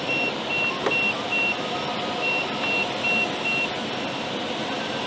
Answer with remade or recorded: recorded